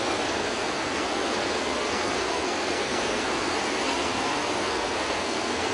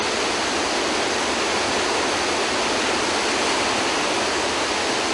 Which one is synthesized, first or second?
first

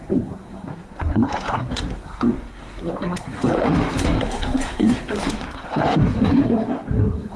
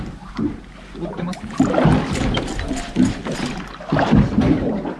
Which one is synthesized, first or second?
first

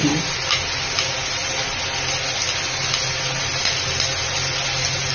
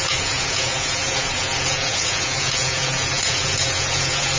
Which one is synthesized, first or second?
second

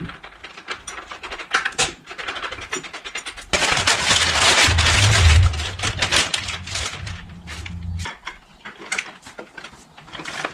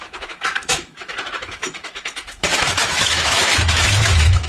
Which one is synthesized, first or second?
second